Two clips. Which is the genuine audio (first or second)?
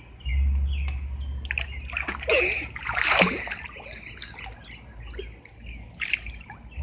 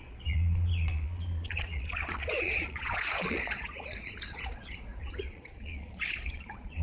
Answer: first